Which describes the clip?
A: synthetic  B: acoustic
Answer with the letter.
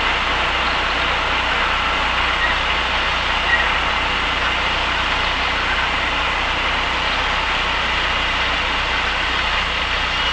B